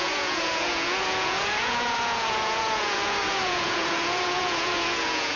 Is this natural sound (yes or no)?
no